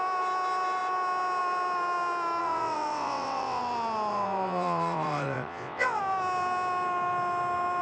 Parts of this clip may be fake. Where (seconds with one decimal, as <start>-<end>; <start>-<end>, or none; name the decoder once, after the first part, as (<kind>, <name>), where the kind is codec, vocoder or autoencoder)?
2.4-3.6 (vocoder, WaveNeXt); 4.1-6.0